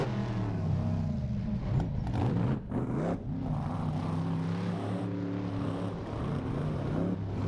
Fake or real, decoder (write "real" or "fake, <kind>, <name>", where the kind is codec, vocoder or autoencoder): real